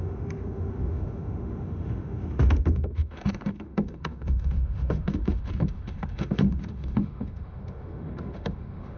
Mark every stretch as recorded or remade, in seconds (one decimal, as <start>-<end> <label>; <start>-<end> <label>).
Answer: 0.0-9.0 remade